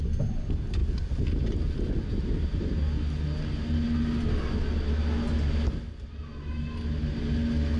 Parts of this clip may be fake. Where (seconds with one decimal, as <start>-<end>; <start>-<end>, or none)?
none